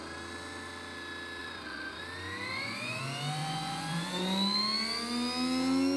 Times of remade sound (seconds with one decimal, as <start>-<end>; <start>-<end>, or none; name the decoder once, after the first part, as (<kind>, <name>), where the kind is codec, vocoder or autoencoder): 1.4-2.0 (vocoder, Vocos); 2.5-3.0; 3.4-4.2